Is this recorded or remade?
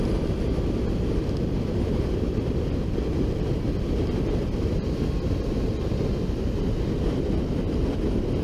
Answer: recorded